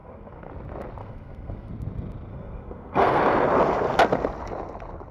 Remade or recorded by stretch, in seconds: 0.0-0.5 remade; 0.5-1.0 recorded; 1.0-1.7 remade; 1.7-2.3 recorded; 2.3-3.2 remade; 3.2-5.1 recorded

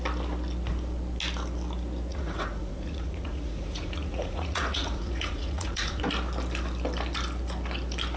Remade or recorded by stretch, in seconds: 0.0-2.1 recorded; 2.1-6.0 remade; 6.0-8.2 recorded